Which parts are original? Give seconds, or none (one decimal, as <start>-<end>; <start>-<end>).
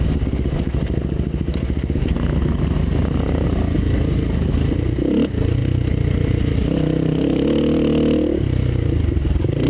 0.0-9.7